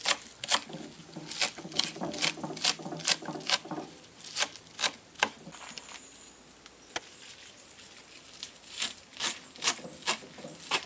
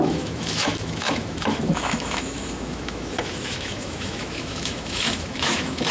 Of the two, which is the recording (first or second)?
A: first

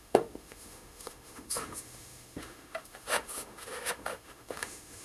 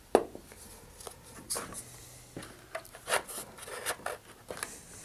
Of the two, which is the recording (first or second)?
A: second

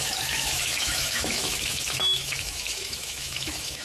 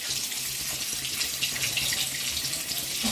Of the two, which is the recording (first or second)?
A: second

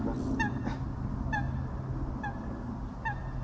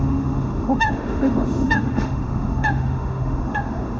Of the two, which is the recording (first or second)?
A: first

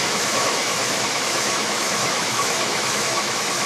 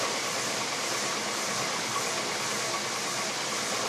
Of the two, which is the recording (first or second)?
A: second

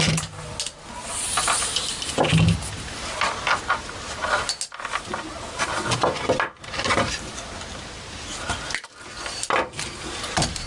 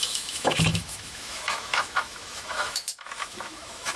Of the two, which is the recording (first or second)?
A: first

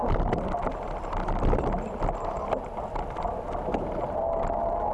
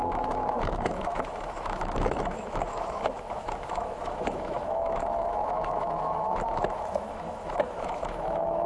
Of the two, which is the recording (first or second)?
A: first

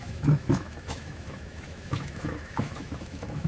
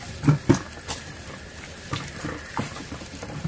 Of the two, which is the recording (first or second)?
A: second